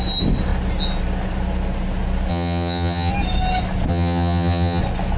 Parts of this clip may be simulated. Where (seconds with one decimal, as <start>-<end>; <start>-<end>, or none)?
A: 2.3-3.1; 3.9-4.8